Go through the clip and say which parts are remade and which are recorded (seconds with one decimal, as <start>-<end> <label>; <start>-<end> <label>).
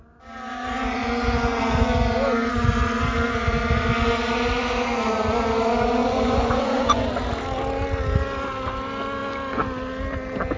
0.0-1.0 recorded; 1.0-1.6 remade; 1.6-6.0 recorded; 6.0-7.1 remade; 7.1-10.6 recorded